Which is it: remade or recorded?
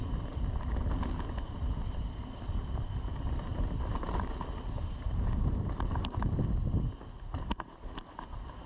recorded